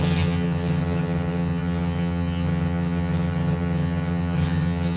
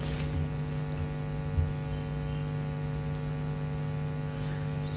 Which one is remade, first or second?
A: first